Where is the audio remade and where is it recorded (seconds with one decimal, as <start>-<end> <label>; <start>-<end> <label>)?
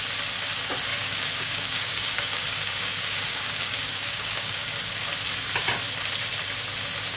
0.0-0.9 recorded; 0.9-4.8 remade; 4.8-7.2 recorded